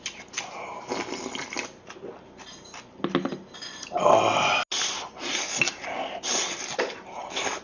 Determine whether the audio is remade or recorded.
recorded